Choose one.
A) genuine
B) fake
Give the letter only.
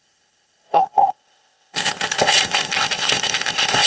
B